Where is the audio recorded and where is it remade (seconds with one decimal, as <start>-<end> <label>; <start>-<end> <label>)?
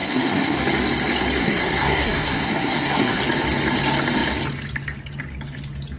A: 0.0-0.6 remade; 0.6-1.4 recorded; 1.4-3.2 remade; 3.2-6.0 recorded